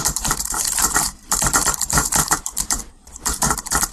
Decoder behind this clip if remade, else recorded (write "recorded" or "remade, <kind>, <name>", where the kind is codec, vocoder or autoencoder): remade, vocoder, BigVGAN v2